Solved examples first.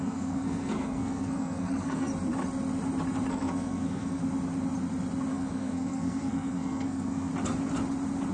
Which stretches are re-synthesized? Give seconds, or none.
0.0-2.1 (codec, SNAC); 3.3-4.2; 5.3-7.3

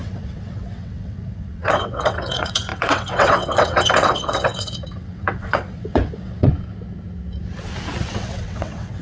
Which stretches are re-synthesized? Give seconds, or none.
0.0-6.5 (vocoder, WaveNeXt); 8.1-9.0

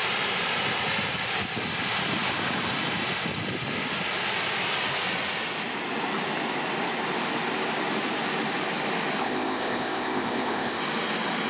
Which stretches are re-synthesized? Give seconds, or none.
9.2-10.8 (codec, ZipCodec)

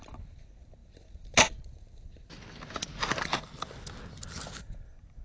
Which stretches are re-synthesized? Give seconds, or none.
none